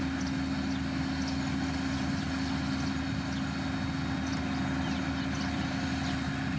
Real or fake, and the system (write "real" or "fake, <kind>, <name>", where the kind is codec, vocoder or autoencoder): real